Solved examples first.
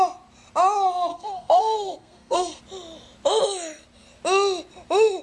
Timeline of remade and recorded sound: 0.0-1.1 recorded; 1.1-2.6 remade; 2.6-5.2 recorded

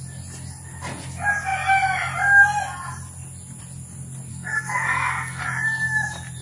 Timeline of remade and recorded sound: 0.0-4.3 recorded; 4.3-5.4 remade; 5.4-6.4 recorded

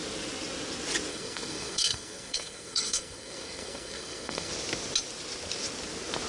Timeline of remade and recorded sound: 0.0-1.1 recorded; 1.1-4.5 remade; 4.5-6.3 recorded

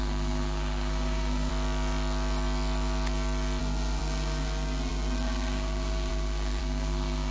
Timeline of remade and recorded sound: 0.0-1.5 remade; 1.5-3.6 recorded; 3.6-7.3 remade